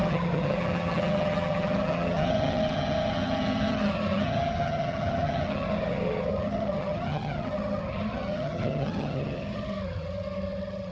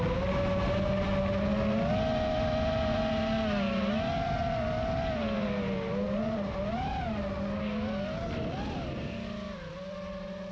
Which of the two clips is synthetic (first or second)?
first